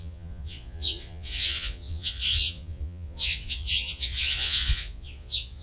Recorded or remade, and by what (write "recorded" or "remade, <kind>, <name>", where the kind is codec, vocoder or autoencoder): remade, vocoder, Vocos